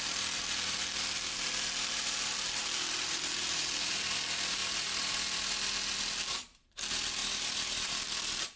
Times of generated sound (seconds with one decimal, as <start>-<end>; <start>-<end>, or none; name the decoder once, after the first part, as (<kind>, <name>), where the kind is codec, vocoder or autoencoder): 0.0-4.6 (vocoder, BigVGAN v2); 6.0-7.2; 8.0-8.6